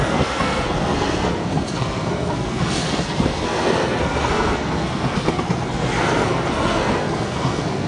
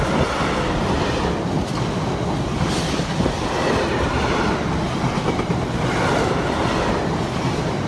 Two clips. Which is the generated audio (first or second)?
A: first